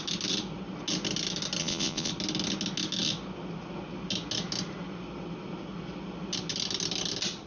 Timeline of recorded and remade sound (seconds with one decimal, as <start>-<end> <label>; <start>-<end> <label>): 0.0-1.6 recorded; 1.6-2.1 remade; 2.1-7.5 recorded